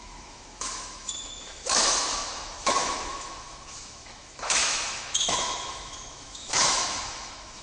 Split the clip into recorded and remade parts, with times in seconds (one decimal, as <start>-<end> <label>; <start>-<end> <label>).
0.0-7.6 remade